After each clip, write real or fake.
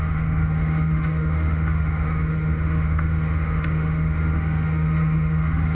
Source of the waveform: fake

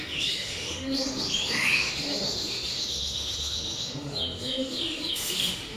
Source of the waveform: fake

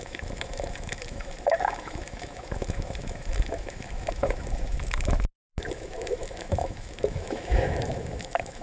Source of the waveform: fake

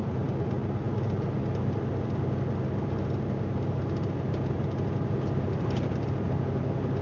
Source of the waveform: real